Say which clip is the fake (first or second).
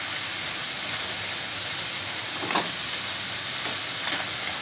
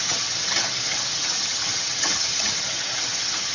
second